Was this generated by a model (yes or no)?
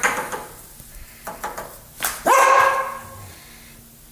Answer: no